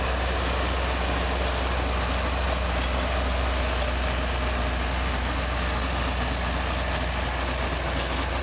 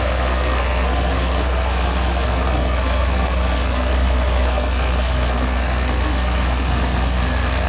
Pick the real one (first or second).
first